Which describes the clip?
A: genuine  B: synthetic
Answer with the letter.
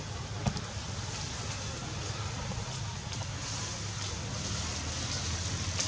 A